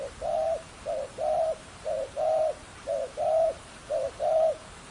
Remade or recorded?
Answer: remade